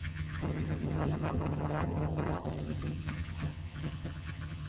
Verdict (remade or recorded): remade